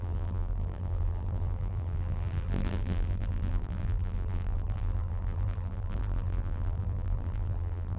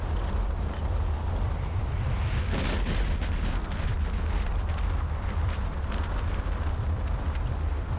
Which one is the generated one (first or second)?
first